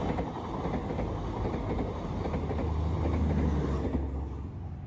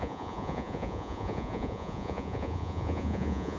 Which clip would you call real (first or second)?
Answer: first